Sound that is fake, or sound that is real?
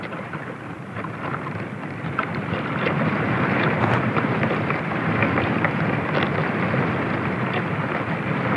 fake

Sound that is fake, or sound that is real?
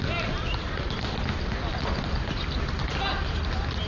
real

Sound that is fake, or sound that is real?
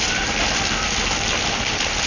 real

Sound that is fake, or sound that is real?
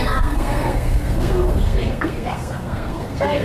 fake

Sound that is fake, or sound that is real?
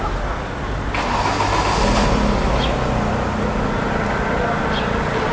real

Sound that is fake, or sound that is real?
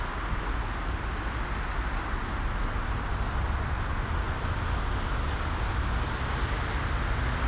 real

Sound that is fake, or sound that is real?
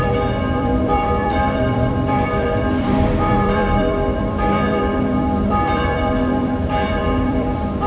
fake